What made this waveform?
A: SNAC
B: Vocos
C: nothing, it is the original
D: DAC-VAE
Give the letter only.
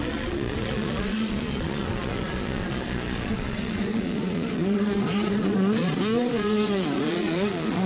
B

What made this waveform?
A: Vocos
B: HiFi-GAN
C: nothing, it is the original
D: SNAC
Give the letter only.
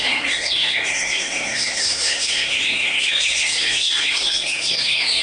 D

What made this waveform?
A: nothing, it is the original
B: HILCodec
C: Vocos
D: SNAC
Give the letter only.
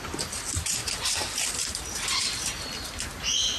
A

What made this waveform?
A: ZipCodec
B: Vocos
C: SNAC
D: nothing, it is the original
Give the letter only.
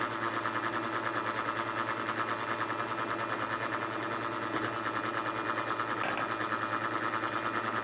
D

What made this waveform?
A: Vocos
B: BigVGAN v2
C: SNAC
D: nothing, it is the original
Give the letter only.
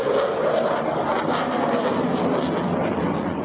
D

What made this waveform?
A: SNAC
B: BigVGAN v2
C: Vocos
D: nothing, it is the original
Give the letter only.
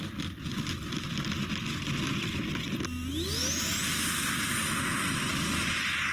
D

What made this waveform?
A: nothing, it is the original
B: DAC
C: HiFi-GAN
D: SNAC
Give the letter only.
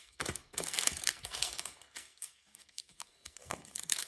D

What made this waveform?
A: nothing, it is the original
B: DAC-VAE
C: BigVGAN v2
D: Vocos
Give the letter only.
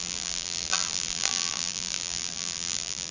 C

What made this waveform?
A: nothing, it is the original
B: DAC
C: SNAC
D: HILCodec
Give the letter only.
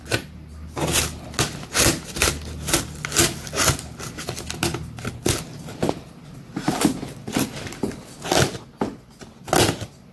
A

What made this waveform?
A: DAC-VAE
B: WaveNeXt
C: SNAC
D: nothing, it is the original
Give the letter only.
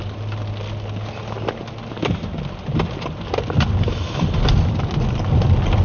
D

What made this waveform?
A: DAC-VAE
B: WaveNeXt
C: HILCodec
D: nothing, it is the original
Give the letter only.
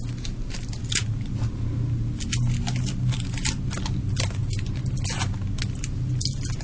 D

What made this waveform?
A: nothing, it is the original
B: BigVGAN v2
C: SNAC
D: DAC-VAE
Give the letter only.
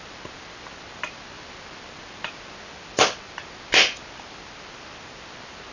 A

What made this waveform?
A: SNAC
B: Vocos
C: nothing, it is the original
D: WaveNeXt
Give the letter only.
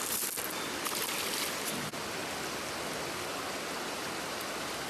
C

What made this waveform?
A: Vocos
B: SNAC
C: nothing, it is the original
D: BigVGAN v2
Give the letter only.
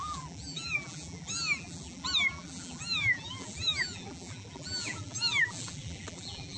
D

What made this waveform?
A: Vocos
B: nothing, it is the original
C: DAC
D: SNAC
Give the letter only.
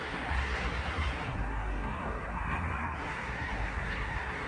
D